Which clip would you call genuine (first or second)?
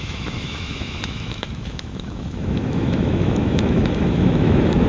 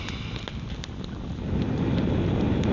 second